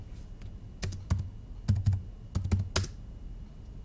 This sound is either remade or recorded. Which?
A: recorded